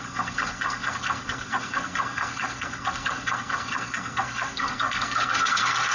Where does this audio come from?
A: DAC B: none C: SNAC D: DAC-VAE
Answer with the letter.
C